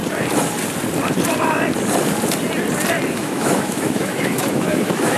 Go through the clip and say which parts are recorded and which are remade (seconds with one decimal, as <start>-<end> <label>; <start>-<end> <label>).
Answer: 0.0-3.1 recorded; 3.1-5.2 remade